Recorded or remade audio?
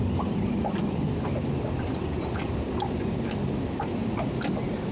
recorded